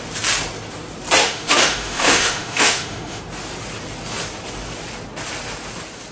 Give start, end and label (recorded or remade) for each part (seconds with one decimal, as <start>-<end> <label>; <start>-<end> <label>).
0.0-1.2 recorded; 1.2-3.2 remade; 3.2-6.1 recorded